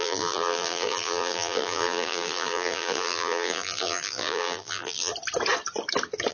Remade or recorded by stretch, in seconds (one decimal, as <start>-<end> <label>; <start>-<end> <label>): 0.0-5.1 remade; 5.1-6.3 recorded